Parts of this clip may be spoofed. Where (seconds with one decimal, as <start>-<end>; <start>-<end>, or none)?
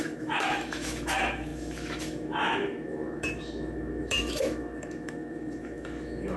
0.0-6.4